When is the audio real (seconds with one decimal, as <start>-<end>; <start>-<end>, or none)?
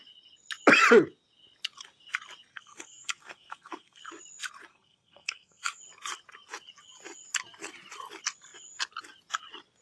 0.0-2.5; 4.0-4.7; 5.8-9.8